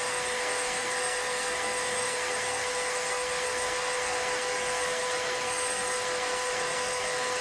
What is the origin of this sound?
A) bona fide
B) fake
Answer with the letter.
B